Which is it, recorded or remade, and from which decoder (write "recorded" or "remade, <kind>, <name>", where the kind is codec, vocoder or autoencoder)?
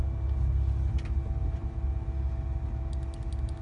recorded